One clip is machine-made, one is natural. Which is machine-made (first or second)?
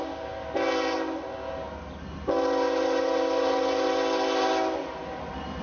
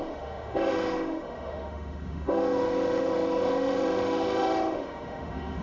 second